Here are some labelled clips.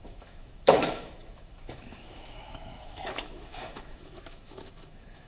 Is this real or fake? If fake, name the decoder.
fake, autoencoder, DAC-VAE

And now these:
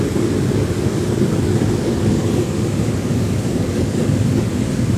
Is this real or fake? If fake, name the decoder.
fake, codec, DAC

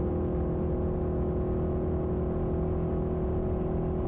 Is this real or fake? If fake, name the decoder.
real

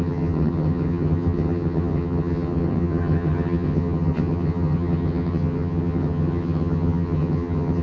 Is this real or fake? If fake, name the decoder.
fake, vocoder, HiFi-GAN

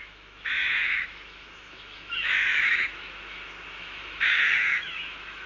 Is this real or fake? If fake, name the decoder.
fake, autoencoder, DAC-VAE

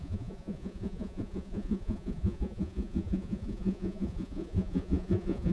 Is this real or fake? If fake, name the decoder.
fake, vocoder, Vocos